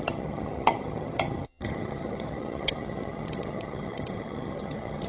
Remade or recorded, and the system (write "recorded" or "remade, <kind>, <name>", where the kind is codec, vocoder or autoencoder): remade, vocoder, HiFi-GAN